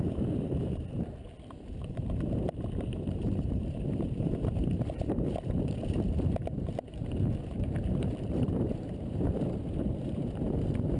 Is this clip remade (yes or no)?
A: yes